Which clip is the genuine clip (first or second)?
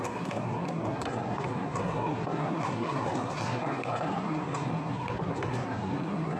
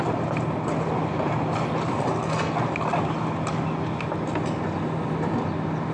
second